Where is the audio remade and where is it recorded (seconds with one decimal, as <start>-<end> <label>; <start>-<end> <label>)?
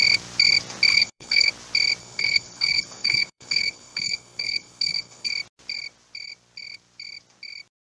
0.0-0.9 recorded; 0.9-1.5 remade; 1.5-2.0 recorded; 2.0-5.3 remade; 5.3-7.8 recorded